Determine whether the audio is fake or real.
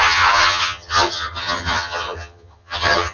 fake